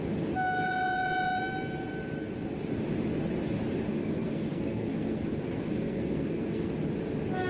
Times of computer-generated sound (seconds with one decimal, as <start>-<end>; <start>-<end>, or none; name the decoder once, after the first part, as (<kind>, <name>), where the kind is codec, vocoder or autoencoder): 3.9-6.7 (codec, SNAC)